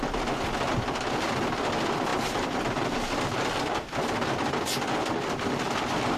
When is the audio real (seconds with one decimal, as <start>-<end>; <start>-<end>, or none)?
0.0-2.1; 5.7-6.2